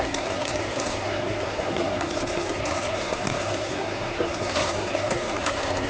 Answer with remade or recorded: remade